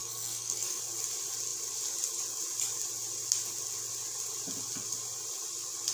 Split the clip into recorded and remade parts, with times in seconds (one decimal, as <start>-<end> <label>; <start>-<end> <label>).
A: 0.0-0.8 remade; 0.8-5.9 recorded